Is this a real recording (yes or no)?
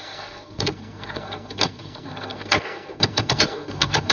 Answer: no